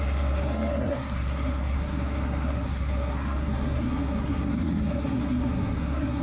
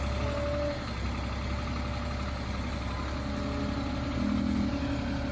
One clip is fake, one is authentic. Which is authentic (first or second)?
second